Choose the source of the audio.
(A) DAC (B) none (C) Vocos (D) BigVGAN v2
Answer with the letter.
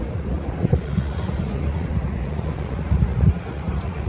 C